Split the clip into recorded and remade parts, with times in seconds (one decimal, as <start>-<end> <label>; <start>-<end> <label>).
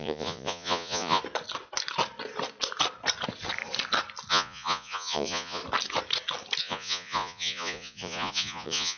0.0-1.2 remade; 1.2-4.3 recorded; 4.3-5.6 remade; 5.6-6.6 recorded; 6.6-9.0 remade